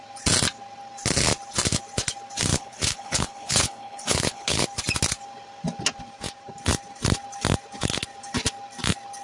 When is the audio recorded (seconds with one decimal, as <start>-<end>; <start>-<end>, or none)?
0.0-2.5; 4.6-9.2